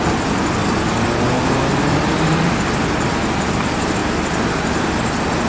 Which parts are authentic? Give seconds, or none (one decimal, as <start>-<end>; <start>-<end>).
0.6-2.1; 4.0-5.5